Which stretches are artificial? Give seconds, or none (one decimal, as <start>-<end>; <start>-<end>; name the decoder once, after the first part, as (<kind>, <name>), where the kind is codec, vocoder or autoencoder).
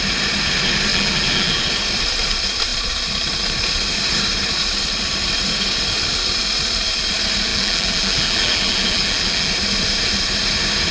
0.9-1.6 (vocoder, BigVGAN v2); 7.5-9.5